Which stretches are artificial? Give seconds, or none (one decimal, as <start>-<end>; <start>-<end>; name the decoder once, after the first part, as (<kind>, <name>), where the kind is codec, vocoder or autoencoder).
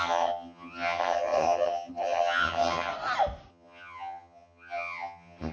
0.0-2.9 (vocoder, HiFi-GAN); 3.5-5.5